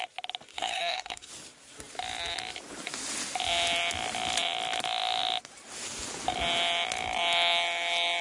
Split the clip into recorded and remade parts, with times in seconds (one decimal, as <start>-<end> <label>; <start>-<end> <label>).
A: 0.0-0.5 recorded; 0.5-1.3 remade; 1.3-8.2 recorded